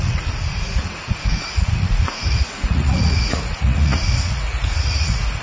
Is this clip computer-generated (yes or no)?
yes